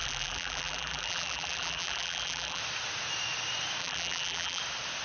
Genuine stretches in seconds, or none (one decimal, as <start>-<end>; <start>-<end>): 2.6-3.8; 4.6-5.0